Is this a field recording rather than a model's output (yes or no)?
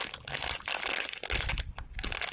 yes